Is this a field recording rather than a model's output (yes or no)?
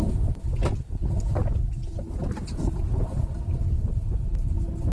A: yes